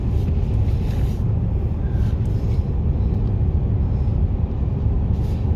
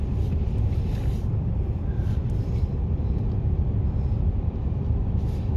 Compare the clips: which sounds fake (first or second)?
second